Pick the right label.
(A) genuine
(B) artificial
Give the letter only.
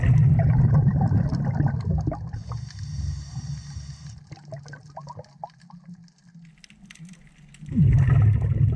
A